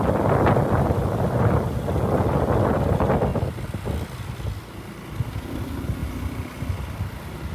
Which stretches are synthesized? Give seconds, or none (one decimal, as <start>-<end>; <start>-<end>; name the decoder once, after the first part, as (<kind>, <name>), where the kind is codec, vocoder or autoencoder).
none